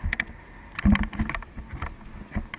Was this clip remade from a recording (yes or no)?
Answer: no